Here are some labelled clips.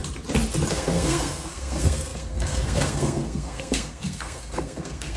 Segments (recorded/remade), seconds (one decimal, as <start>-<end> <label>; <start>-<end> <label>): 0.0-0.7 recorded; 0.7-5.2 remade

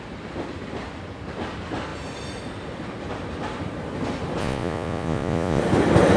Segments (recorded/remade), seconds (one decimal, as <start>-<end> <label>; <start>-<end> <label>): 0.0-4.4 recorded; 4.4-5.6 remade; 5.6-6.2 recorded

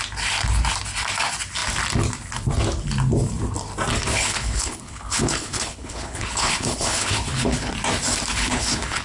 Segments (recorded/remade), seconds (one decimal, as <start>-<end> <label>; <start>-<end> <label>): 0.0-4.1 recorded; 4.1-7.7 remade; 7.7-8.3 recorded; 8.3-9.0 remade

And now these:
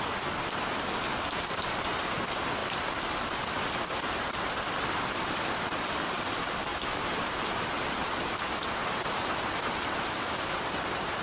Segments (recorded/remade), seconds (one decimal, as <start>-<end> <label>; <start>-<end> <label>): 0.0-2.6 recorded; 2.6-3.6 remade; 3.6-6.7 recorded; 6.7-7.6 remade; 7.6-8.8 recorded; 8.8-10.4 remade; 10.4-11.2 recorded